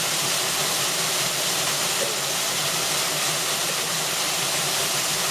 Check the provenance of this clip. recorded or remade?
recorded